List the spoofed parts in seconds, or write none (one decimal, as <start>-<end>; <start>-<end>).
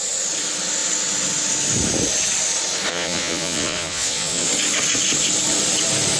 2.9-4.5